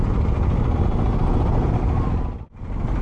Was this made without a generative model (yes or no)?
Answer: yes